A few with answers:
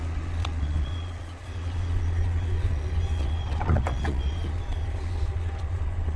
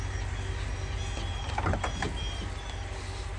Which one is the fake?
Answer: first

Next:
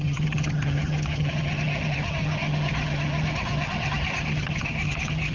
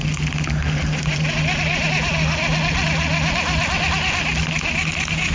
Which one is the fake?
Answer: first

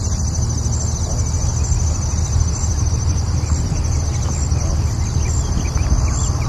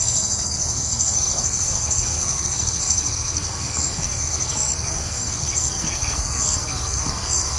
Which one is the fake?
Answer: second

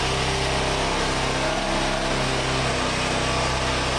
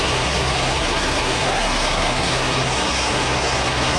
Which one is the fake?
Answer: second